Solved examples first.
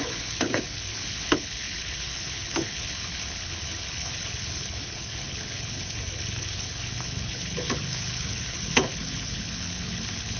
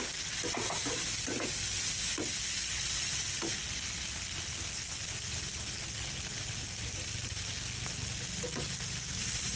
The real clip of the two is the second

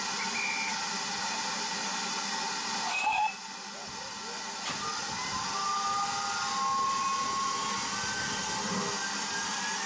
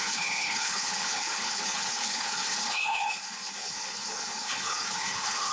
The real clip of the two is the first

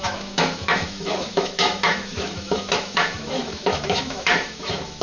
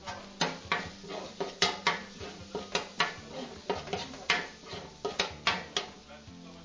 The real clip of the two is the second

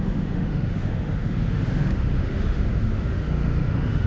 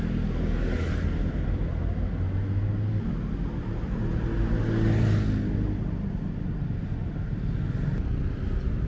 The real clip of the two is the second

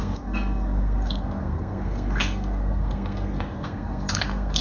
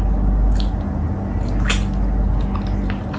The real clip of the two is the second